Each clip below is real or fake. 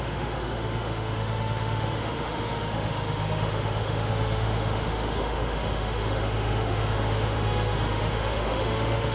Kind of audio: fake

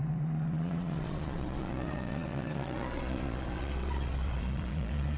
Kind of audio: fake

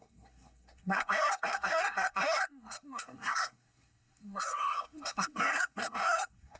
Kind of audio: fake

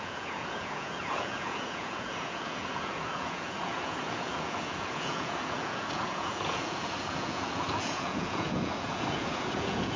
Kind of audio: fake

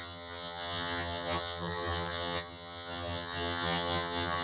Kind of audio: fake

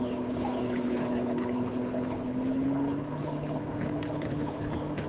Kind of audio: fake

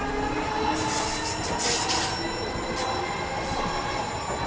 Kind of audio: real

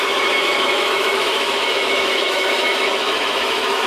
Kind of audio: fake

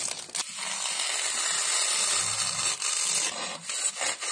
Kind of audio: real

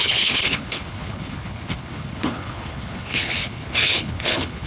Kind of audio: fake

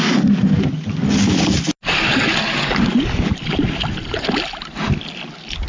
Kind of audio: real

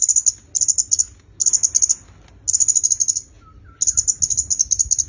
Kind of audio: real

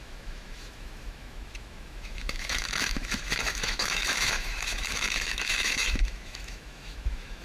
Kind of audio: fake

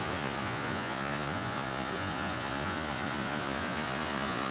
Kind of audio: fake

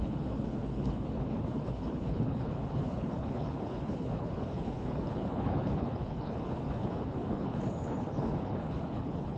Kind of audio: fake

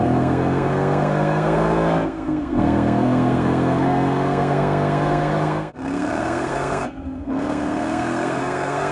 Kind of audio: fake